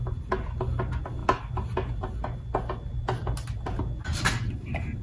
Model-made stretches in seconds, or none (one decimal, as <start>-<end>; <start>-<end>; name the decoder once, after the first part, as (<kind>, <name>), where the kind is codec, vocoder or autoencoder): none